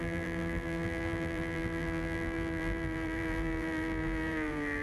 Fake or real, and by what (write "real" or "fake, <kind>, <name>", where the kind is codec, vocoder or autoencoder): fake, vocoder, BigVGAN v2